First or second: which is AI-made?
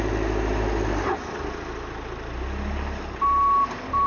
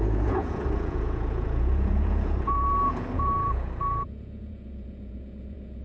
second